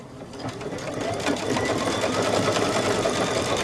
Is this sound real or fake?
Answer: fake